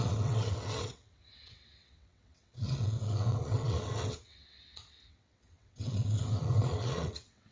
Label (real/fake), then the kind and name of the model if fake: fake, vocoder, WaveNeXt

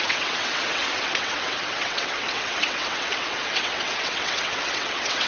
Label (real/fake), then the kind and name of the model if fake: fake, vocoder, WaveNeXt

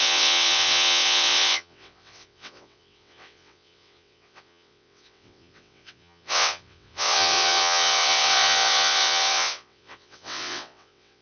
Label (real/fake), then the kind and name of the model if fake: fake, vocoder, WaveNeXt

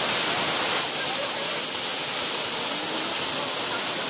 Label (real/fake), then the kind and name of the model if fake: real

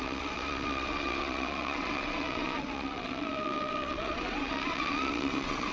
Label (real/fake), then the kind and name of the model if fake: fake, vocoder, WaveNeXt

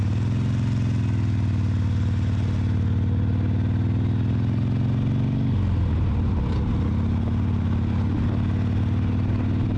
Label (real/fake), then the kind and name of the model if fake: real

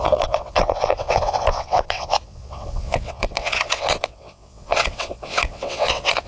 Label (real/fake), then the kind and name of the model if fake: fake, vocoder, WaveNeXt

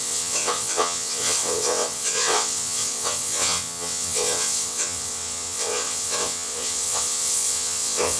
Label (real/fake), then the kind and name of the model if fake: fake, vocoder, WaveNeXt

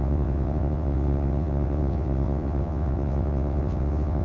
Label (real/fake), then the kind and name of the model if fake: fake, vocoder, WaveNeXt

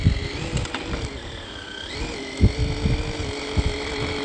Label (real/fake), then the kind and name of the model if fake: real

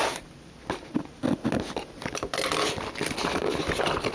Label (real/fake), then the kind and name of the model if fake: real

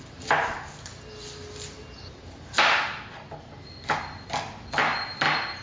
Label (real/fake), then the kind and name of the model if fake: real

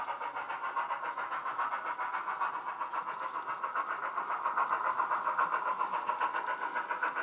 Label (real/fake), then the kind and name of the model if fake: real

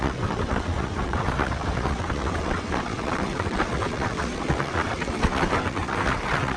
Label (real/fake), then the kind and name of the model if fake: fake, vocoder, WaveNeXt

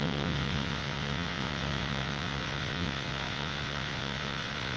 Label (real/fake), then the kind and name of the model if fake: fake, vocoder, WaveNeXt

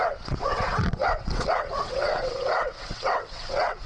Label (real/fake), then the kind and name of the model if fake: fake, vocoder, WaveNeXt